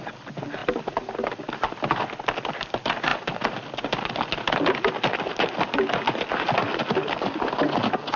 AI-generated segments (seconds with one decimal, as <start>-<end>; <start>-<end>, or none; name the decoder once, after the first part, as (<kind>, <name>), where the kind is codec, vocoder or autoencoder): none